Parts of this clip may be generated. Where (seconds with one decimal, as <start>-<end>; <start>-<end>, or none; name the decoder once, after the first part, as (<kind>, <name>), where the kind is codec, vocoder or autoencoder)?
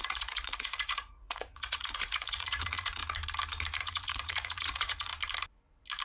0.0-3.0 (vocoder, Vocos); 3.8-5.1